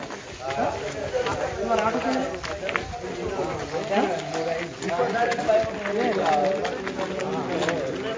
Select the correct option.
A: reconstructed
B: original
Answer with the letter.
B